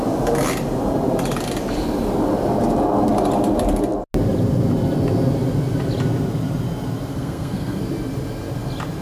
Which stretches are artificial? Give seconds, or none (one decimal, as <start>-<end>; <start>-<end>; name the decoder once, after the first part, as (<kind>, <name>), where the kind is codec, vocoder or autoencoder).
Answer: 7.1-7.8 (codec, SNAC)